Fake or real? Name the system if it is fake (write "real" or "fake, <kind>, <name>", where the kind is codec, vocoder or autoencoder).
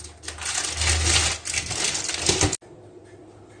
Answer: real